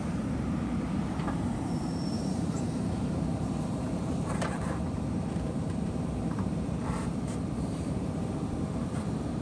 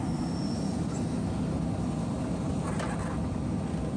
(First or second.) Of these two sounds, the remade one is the first